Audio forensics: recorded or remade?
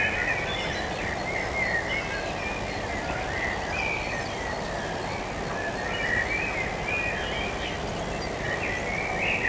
recorded